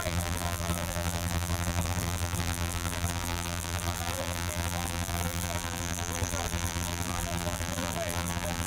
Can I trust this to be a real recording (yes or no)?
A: no